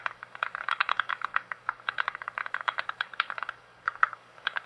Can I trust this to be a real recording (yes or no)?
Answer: no